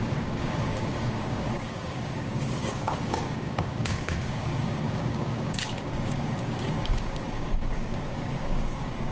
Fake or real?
fake